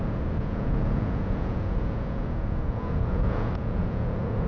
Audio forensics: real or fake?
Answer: fake